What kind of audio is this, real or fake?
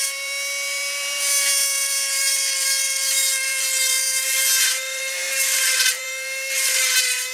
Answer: fake